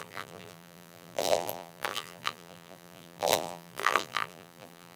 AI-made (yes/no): yes